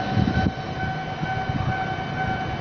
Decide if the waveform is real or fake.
real